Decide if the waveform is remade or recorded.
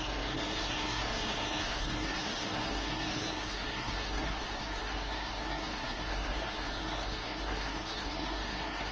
remade